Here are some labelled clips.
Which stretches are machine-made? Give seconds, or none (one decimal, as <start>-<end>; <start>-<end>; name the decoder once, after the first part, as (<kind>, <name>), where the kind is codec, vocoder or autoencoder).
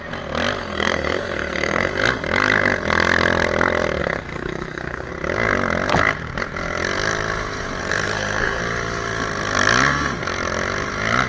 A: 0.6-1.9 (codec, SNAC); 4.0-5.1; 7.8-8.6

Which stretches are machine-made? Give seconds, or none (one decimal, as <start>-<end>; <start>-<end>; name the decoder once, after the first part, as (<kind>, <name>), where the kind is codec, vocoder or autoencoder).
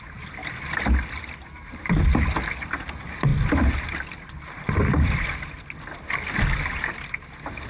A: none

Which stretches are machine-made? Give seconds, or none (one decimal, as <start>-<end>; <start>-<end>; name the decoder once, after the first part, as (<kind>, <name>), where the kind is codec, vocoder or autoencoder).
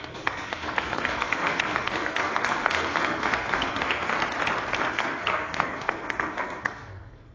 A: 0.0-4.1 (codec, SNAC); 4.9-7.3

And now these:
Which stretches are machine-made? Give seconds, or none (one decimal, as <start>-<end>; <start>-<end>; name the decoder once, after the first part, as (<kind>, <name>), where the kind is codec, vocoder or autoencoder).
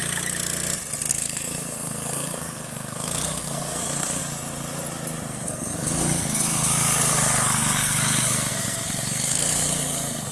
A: 1.1-4.2 (codec, SNAC); 5.3-10.3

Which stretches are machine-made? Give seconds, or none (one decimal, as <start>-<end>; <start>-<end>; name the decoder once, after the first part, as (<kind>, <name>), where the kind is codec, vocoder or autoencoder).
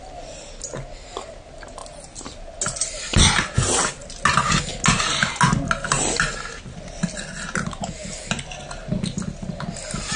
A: none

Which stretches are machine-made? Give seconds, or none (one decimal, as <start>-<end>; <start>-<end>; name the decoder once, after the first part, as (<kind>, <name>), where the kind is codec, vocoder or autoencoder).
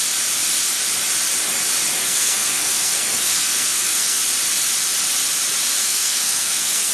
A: 2.0-4.2 (codec, SNAC); 5.8-6.9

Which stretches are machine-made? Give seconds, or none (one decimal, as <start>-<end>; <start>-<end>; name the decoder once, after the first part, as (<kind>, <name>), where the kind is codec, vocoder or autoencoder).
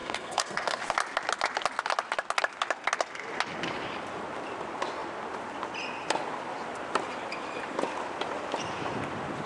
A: 0.0-0.8 (codec, SNAC)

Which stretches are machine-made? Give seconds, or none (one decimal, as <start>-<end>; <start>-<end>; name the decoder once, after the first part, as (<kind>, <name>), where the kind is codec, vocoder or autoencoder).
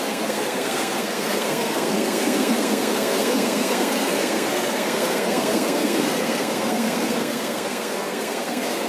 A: 0.0-8.9 (codec, SNAC)